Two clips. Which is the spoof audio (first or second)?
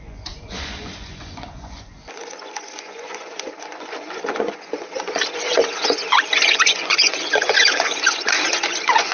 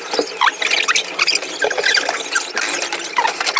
first